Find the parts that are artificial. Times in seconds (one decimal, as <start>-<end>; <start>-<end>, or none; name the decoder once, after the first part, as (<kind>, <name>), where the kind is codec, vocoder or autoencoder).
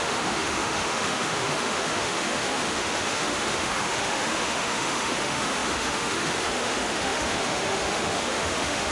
0.0-8.9 (autoencoder, DAC-VAE)